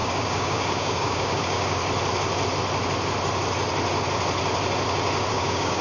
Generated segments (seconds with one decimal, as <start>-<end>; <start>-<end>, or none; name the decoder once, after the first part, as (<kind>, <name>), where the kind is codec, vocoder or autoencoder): 0.0-1.8 (codec, DAC); 5.3-5.8